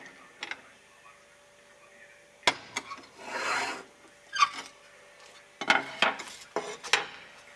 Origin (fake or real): real